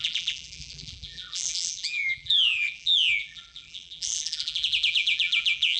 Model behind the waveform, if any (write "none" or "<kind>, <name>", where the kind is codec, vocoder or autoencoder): vocoder, BigVGAN v2